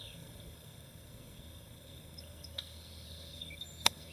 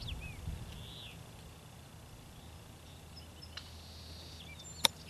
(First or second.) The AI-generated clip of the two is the first